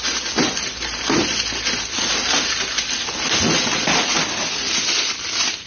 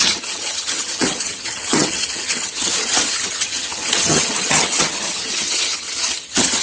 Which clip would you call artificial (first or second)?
second